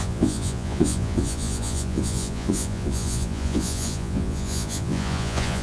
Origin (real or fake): fake